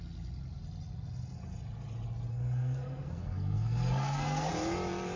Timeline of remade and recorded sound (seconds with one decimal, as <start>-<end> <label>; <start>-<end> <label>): 0.0-2.3 recorded; 2.3-4.5 remade; 4.5-5.2 recorded